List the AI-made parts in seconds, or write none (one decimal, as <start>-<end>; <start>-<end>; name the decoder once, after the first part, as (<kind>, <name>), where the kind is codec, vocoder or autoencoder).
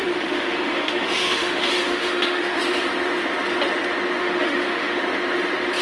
0.0-2.6 (autoencoder, DAC-VAE); 4.2-5.0